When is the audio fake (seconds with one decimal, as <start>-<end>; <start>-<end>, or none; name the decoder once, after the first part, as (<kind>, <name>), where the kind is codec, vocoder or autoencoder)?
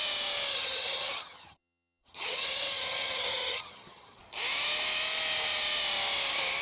0.5-4.2 (vocoder, HiFi-GAN)